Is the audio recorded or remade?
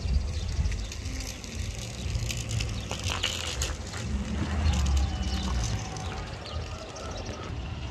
recorded